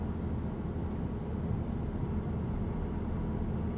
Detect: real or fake real